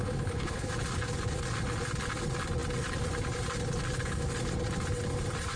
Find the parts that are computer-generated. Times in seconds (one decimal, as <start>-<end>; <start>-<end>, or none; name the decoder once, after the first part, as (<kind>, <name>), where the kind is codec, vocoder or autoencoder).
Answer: 0.0-0.7 (codec, HILCodec)